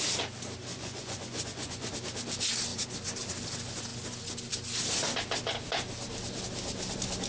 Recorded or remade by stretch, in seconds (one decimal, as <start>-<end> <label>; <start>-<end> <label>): 0.0-0.7 recorded; 0.7-1.9 remade; 1.9-7.3 recorded